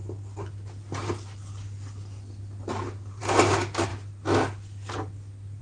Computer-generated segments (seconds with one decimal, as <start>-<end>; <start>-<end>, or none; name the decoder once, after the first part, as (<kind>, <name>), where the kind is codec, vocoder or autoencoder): none